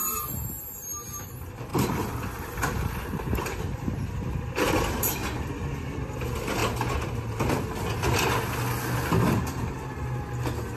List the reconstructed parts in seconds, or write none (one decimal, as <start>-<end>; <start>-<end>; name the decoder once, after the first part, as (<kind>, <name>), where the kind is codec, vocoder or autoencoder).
1.2-5.2 (vocoder, BigVGAN v2); 6.1-6.6